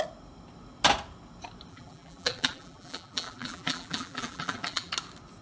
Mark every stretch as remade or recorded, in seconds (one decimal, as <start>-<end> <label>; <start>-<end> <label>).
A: 0.0-1.7 recorded; 1.7-4.9 remade; 4.9-5.4 recorded